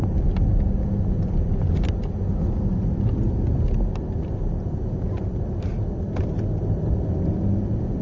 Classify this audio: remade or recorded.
recorded